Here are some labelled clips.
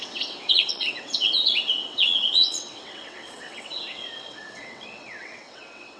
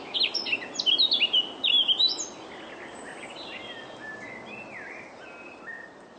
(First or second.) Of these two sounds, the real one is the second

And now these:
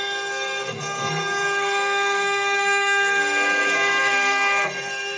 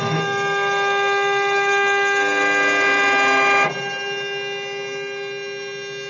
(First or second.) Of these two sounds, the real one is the second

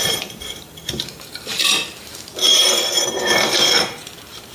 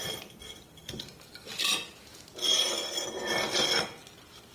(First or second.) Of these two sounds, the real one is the second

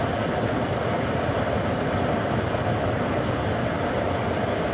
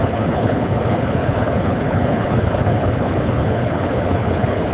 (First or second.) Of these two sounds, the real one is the first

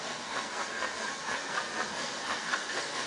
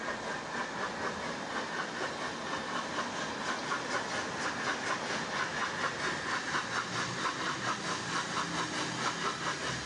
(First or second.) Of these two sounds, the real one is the second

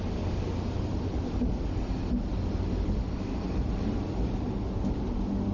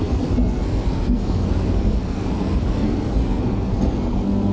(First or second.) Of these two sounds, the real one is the first